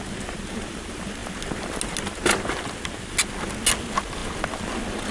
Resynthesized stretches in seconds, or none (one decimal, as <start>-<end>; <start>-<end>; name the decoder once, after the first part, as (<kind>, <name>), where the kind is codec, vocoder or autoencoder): none